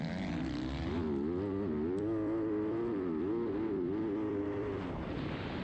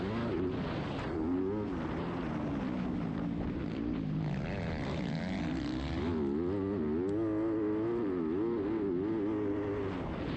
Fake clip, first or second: first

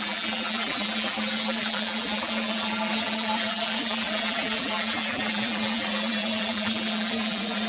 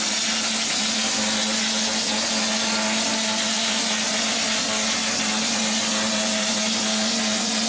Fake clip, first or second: first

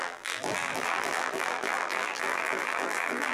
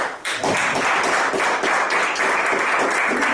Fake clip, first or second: first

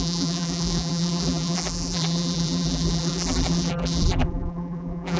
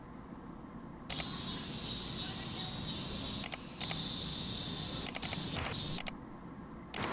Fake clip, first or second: first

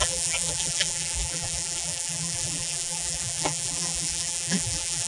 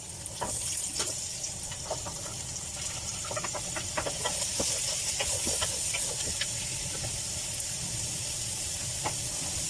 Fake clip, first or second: first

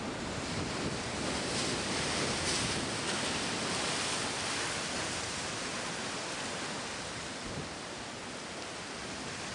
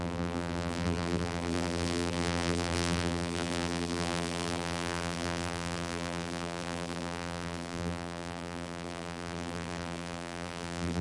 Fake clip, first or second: second